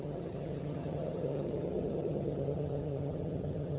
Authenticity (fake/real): fake